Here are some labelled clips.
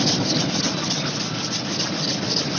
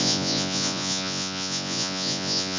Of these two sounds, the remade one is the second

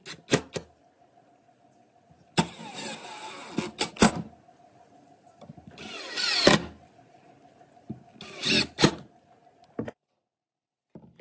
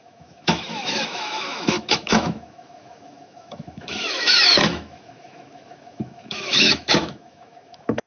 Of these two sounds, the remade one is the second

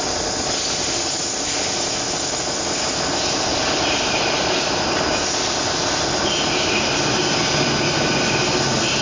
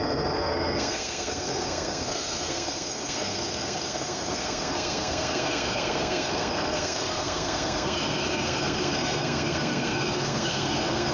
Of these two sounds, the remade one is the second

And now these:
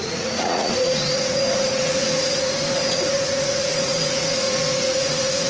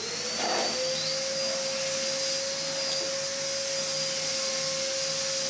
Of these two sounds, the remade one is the first